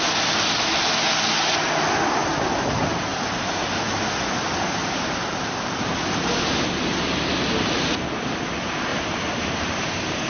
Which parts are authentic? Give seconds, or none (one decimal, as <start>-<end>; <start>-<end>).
0.0-3.1; 3.8-4.8; 6.1-8.9